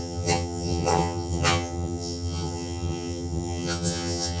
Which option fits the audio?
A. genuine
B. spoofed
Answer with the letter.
B